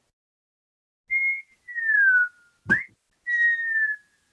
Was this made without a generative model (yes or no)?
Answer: yes